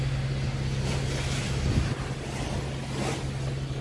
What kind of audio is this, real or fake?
real